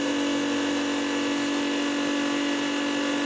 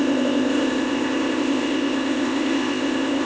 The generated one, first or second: second